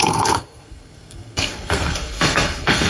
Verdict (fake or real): fake